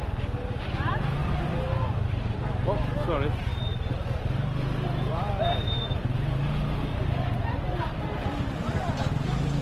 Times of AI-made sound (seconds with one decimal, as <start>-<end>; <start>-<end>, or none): 1.2-2.4